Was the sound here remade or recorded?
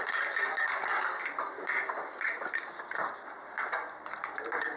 recorded